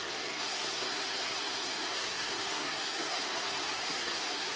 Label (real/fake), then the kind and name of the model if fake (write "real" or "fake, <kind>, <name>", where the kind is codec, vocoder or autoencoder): fake, codec, SNAC